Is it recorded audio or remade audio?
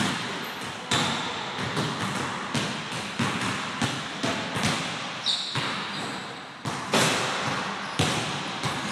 recorded